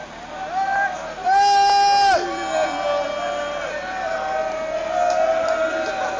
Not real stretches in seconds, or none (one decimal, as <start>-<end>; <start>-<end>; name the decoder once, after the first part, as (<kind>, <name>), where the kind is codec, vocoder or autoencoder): none